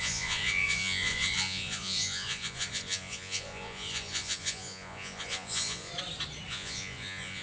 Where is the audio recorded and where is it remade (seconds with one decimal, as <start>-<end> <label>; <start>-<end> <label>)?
0.0-5.9 remade; 5.9-6.5 recorded; 6.5-7.4 remade